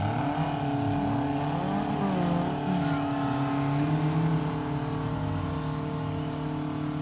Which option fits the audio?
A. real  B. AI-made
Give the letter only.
A